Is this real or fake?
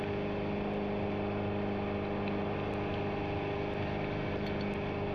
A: real